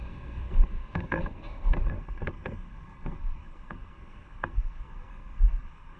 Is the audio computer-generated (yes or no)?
yes